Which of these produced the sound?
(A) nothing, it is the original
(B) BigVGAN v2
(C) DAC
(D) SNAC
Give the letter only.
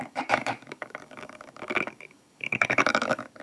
C